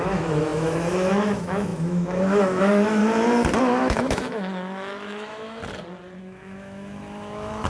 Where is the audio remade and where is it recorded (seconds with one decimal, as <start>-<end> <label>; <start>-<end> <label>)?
0.0-3.0 remade; 3.0-3.6 recorded; 3.6-5.6 remade; 5.6-6.2 recorded; 6.2-7.7 remade